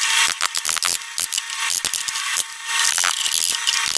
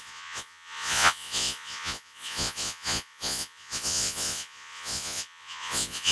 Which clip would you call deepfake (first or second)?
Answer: second